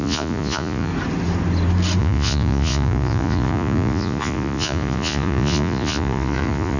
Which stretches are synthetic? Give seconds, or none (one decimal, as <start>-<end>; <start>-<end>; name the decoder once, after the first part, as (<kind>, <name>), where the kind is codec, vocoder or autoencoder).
0.0-0.9 (vocoder, Vocos); 2.0-6.8